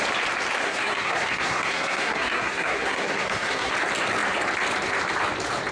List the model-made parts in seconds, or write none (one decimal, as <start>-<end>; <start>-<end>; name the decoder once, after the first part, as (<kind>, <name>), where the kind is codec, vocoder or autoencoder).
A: 0.6-3.7 (codec, SNAC)